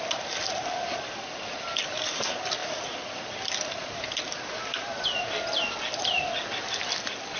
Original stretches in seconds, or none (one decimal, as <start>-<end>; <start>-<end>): 0.0-7.4

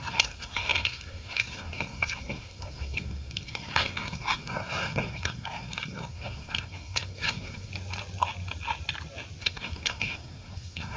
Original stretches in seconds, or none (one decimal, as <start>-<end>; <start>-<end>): 7.7-9.4